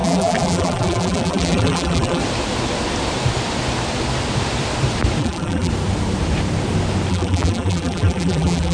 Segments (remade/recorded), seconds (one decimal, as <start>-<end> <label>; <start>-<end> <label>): 0.0-2.2 remade; 2.2-5.2 recorded; 5.2-5.7 remade; 5.7-7.1 recorded; 7.1-8.7 remade